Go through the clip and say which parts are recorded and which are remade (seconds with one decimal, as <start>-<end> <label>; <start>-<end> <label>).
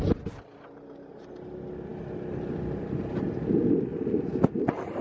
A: 0.0-5.0 recorded